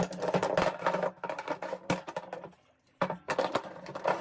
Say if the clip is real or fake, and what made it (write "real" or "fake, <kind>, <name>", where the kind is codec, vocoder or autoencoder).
real